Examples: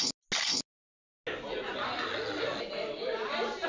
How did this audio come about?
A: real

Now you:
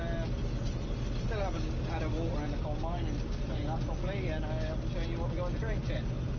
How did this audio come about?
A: real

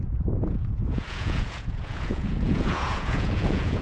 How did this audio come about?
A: fake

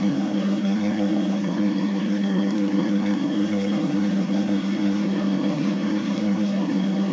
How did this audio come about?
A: fake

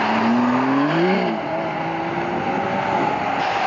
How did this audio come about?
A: real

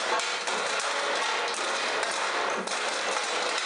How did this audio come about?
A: real